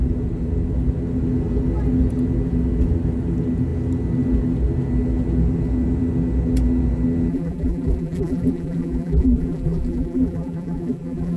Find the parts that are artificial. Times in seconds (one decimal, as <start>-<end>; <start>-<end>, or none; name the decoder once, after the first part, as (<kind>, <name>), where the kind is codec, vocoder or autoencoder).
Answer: 7.3-11.4 (vocoder, BigVGAN v2)